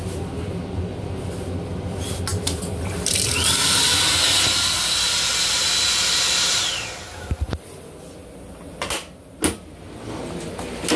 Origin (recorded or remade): recorded